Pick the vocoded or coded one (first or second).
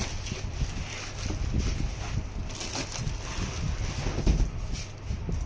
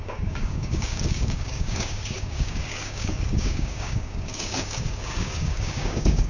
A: second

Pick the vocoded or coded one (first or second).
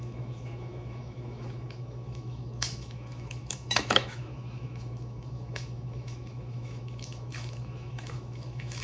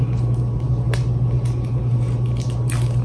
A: first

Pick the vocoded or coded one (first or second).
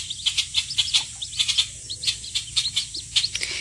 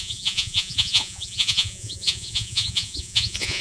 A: second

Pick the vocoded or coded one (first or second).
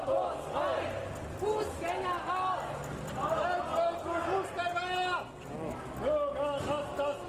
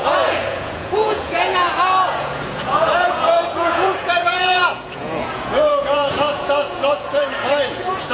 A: second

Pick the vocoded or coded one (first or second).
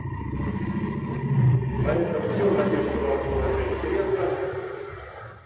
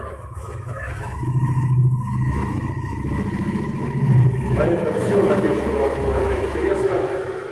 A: second